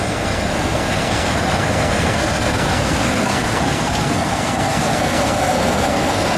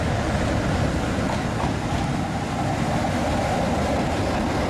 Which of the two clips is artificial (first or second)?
first